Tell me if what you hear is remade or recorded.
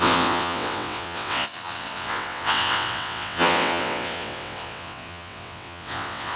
remade